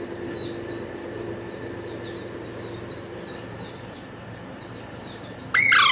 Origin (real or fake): real